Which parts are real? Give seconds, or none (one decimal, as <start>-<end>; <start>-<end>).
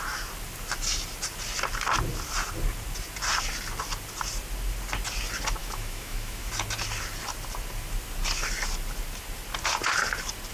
0.0-5.6; 6.5-10.5